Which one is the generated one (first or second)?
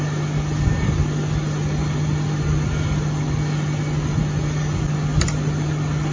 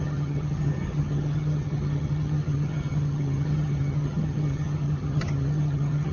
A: second